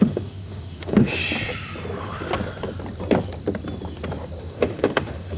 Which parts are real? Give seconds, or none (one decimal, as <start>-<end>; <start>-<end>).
1.2-4.4